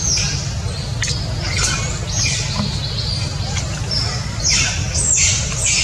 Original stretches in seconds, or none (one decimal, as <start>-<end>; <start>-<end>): 0.0-5.8

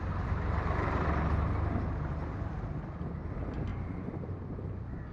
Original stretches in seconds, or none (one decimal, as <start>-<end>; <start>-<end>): 1.3-3.7; 4.4-5.1